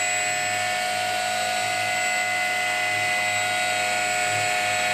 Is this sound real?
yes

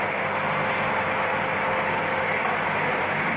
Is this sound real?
yes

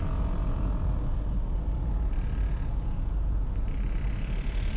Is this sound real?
yes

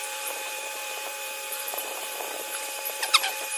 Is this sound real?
no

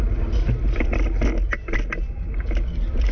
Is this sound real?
yes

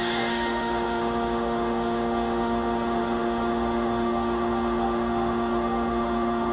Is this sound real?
no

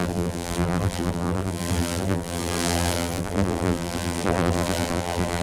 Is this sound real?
no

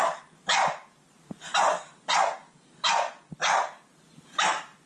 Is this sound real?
yes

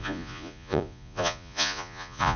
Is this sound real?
no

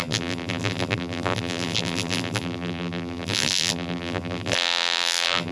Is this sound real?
no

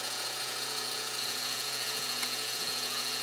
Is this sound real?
no